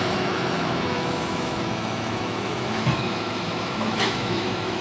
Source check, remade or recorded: remade